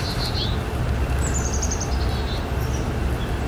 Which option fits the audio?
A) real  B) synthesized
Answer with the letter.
A